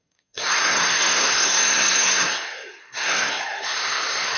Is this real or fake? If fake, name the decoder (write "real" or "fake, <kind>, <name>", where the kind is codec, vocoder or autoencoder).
fake, codec, SNAC